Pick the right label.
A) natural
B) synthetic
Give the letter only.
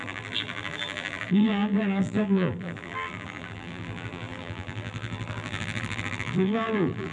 B